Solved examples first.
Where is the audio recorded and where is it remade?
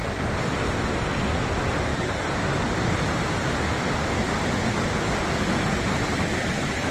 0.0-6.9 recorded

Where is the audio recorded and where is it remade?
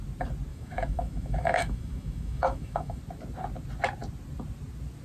0.0-0.5 recorded; 0.5-3.0 remade; 3.0-5.0 recorded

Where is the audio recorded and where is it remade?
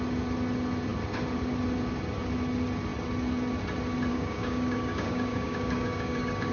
0.0-4.1 recorded; 4.1-6.5 remade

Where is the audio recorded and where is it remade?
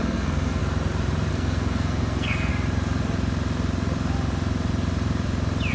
0.0-0.6 remade; 0.6-1.3 recorded; 1.3-2.5 remade; 2.5-5.7 recorded